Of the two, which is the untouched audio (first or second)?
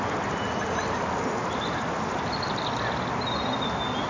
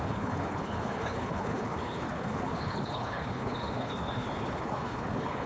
first